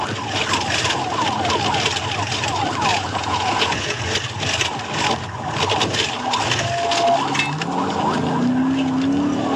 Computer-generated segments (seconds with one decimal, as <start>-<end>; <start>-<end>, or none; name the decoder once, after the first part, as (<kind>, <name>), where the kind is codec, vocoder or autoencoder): 2.9-4.0 (vocoder, Vocos)